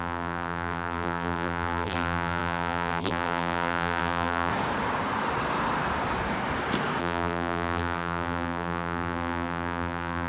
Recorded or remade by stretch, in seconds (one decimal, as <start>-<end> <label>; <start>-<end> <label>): 0.0-4.5 remade; 4.5-7.0 recorded; 7.0-10.3 remade